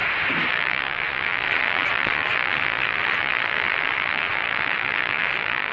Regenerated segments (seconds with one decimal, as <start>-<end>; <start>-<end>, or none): 0.5-5.7